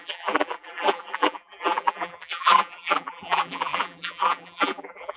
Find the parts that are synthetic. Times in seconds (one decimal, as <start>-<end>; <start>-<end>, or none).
0.0-5.2